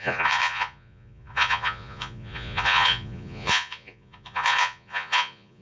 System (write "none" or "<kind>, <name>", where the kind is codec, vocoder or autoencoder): vocoder, Vocos